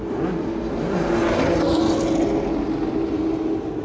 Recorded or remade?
recorded